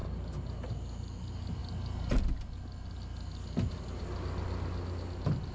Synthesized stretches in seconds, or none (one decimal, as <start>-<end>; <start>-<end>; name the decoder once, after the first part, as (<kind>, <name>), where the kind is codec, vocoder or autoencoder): none